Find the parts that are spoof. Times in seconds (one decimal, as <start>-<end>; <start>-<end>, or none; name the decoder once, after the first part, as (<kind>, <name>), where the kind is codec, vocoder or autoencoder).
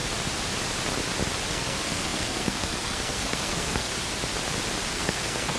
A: 1.5-3.9 (codec, SNAC); 4.9-5.6